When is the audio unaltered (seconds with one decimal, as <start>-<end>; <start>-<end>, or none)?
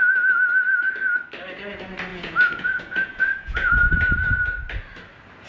0.0-2.1; 3.7-5.5